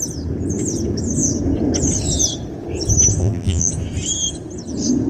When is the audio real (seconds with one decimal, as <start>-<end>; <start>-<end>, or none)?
0.0-3.2; 3.7-5.1